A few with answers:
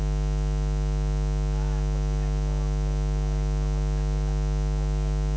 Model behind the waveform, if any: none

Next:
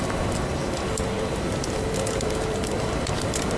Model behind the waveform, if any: vocoder, BigVGAN v2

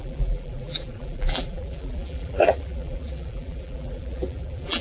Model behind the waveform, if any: vocoder, BigVGAN v2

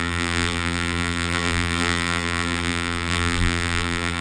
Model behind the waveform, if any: vocoder, BigVGAN v2